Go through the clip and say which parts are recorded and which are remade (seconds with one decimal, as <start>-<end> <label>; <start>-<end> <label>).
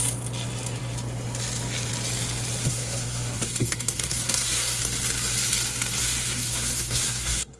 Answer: 0.0-2.6 recorded; 2.6-4.8 remade; 4.8-6.0 recorded; 6.0-7.6 remade